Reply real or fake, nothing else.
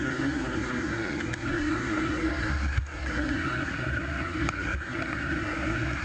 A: fake